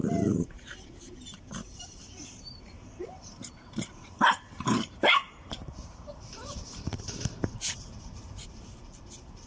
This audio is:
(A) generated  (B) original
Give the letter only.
A